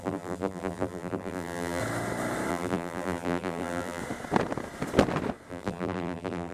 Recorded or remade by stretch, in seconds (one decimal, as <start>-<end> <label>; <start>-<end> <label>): 0.0-1.8 remade; 1.8-2.5 recorded; 2.5-4.0 remade; 4.0-5.5 recorded; 5.5-6.5 remade